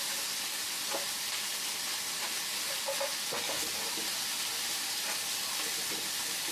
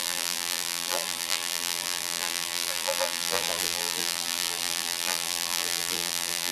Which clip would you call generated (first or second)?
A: second